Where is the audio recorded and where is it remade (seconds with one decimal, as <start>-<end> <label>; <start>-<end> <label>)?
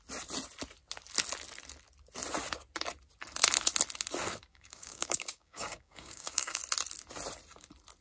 0.0-4.5 recorded; 4.5-6.6 remade; 6.6-8.0 recorded